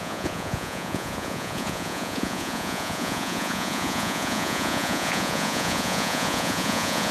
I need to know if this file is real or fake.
fake